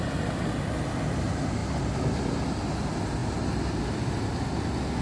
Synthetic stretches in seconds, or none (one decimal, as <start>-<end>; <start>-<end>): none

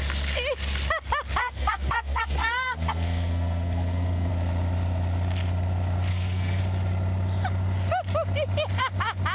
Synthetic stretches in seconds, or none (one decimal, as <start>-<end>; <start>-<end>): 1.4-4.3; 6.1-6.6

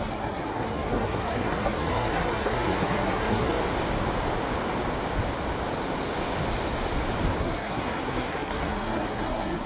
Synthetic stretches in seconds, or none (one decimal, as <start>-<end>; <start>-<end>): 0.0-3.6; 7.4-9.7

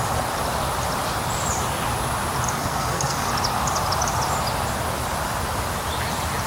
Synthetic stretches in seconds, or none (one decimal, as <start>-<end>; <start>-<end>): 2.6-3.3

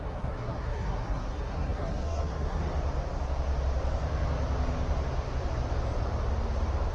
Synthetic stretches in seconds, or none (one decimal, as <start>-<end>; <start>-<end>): 0.0-2.6

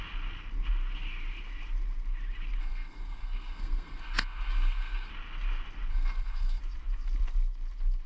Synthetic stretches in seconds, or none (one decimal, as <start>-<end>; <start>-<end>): 2.6-5.1; 5.9-6.6

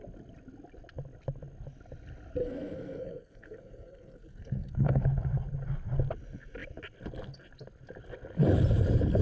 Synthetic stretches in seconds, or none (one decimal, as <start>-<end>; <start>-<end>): 2.4-5.0